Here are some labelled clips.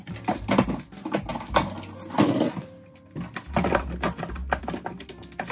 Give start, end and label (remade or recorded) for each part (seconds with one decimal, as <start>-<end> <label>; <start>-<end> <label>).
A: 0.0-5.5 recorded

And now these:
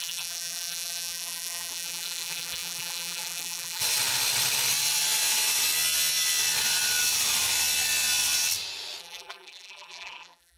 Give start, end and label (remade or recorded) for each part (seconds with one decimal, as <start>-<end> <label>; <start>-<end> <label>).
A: 0.0-3.8 remade; 3.8-9.0 recorded; 9.0-10.6 remade

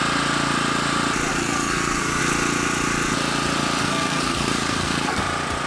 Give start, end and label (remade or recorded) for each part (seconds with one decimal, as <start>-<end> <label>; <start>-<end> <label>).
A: 0.0-1.3 recorded; 1.3-2.2 remade; 2.2-3.8 recorded; 3.8-5.2 remade; 5.2-5.7 recorded